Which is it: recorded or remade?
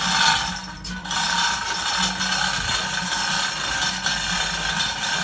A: recorded